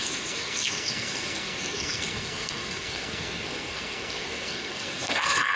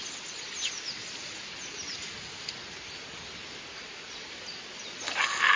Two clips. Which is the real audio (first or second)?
second